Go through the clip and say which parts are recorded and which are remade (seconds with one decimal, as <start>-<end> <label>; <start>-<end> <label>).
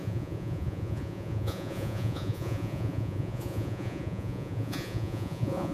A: 0.0-5.7 remade